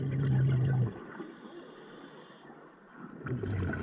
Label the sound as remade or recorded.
recorded